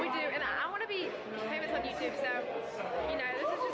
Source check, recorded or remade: recorded